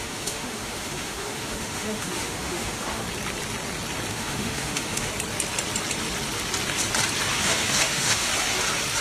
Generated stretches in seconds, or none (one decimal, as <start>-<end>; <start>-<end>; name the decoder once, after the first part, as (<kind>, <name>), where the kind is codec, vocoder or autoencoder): 0.0-3.0 (autoencoder, DAC-VAE); 4.1-5.1; 7.4-8.3